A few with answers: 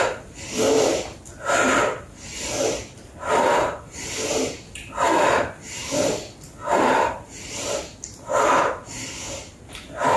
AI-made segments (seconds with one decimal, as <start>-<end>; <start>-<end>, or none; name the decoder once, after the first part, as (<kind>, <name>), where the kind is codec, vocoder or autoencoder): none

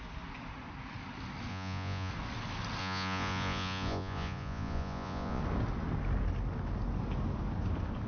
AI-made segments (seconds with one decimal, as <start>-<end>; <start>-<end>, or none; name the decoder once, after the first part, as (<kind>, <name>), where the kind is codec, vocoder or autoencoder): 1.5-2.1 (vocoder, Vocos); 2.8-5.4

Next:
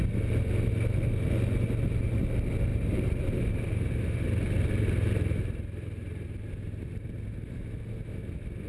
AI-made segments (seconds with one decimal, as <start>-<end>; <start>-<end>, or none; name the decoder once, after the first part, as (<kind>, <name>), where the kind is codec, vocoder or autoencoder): 2.7-7.6 (vocoder, BigVGAN v2)